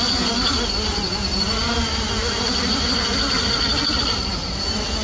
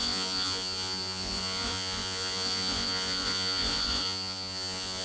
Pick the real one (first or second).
first